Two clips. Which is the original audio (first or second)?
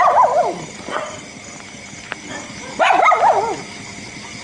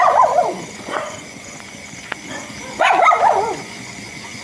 first